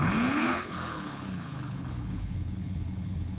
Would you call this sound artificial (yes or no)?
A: yes